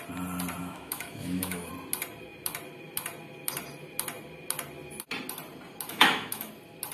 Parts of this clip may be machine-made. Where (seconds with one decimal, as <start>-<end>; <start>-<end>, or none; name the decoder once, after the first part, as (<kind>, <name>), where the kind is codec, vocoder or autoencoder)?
0.6-1.7 (autoencoder, DAC-VAE); 5.9-6.5